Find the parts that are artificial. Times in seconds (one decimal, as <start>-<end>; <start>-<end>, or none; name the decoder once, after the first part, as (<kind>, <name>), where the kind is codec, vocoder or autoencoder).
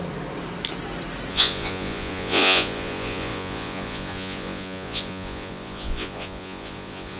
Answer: 1.3-7.2 (vocoder, Vocos)